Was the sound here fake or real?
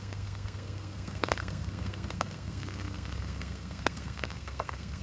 fake